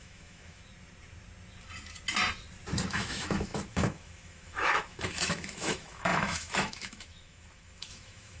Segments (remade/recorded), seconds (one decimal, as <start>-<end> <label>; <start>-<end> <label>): 0.0-0.6 remade; 0.6-2.9 recorded; 2.9-8.4 remade